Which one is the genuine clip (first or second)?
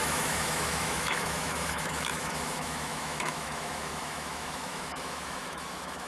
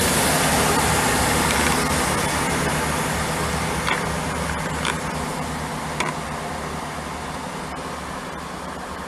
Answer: second